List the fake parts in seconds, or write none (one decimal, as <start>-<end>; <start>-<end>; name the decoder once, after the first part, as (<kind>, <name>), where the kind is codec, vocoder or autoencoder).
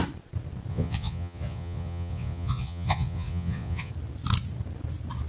0.7-3.9 (vocoder, Vocos)